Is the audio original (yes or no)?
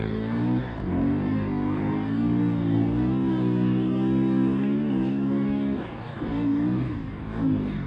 no